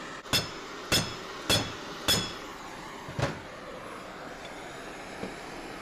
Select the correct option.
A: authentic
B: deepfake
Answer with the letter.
A